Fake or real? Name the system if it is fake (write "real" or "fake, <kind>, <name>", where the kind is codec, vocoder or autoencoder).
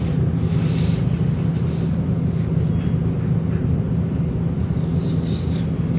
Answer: real